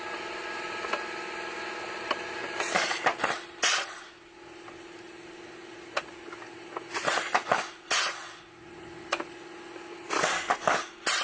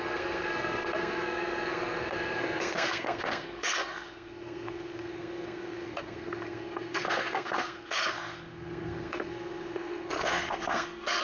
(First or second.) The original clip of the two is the first